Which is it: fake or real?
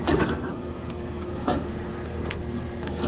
fake